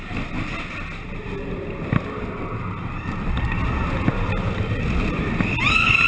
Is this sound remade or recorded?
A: recorded